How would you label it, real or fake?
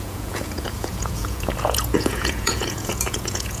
fake